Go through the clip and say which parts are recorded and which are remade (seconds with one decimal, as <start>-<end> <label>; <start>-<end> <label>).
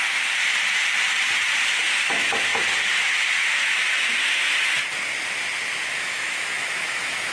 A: 0.0-2.1 recorded; 2.1-2.5 remade; 2.5-6.0 recorded; 6.0-7.3 remade